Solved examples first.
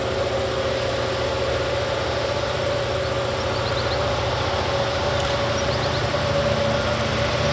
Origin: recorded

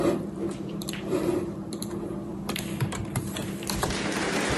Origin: remade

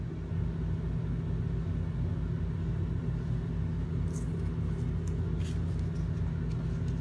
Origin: recorded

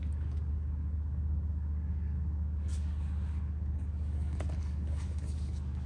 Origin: remade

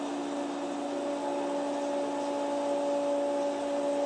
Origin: recorded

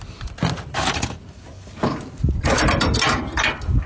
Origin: recorded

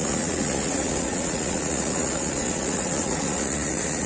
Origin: remade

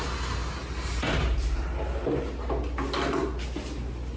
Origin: recorded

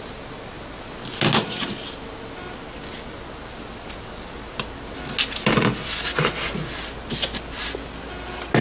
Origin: recorded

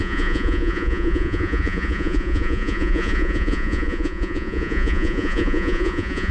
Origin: remade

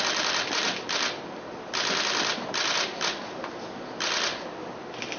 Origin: recorded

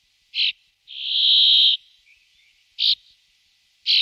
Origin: recorded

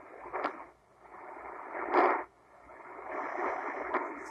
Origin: recorded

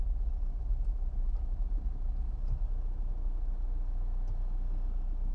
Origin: recorded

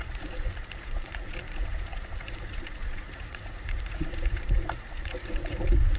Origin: remade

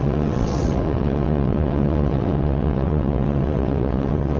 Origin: remade